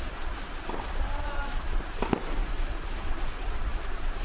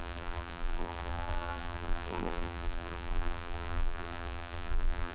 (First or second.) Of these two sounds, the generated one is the second